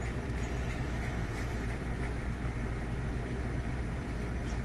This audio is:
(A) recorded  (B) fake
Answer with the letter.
B